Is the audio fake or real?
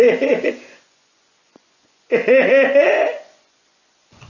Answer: fake